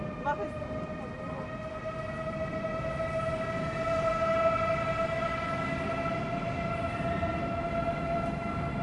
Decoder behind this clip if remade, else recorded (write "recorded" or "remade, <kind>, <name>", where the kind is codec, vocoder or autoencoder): recorded